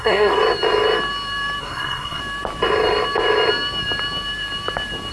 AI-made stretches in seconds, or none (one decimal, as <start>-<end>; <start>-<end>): 0.0-0.4; 1.6-2.2